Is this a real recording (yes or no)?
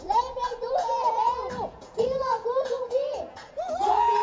no